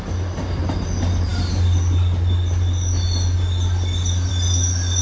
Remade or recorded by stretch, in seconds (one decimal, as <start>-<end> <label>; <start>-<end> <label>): 0.0-5.0 recorded